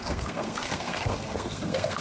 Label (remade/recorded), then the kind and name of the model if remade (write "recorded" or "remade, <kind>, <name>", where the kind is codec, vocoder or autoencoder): remade, codec, SNAC